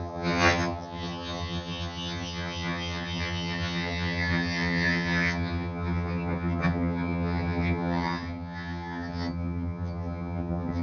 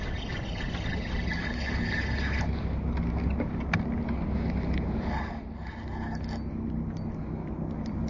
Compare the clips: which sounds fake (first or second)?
first